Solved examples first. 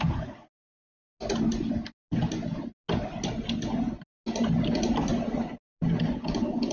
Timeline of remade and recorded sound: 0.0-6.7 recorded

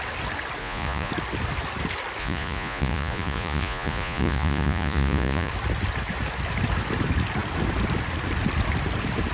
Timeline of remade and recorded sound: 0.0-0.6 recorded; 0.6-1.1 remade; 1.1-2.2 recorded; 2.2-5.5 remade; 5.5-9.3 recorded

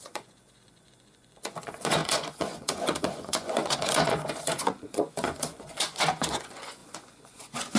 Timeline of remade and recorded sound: 0.0-7.8 remade

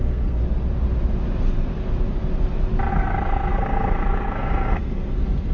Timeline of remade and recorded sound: 0.0-0.4 remade; 0.4-2.9 recorded; 2.9-5.5 remade

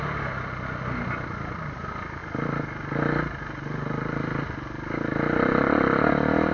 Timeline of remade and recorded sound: 0.0-6.5 recorded